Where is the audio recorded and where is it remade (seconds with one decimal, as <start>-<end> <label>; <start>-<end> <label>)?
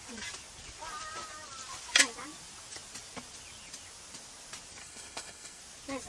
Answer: 0.0-4.8 recorded; 4.8-5.6 remade; 5.6-6.1 recorded